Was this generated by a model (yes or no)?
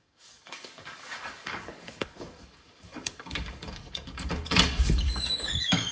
yes